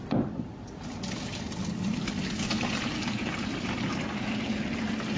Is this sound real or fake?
real